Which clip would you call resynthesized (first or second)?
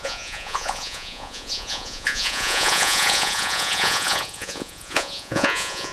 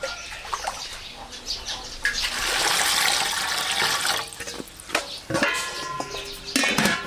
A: first